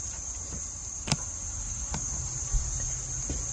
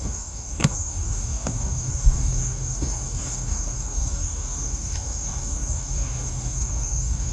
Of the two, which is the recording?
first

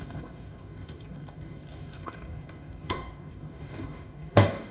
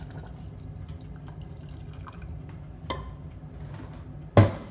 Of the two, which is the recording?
second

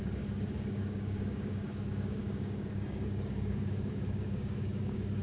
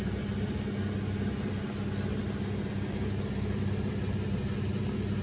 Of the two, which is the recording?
second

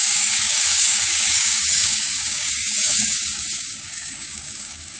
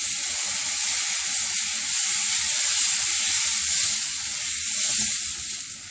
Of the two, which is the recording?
second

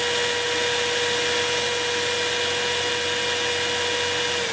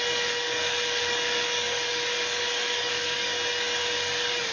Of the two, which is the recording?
first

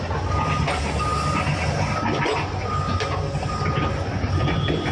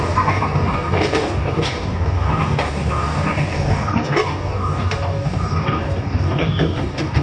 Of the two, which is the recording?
first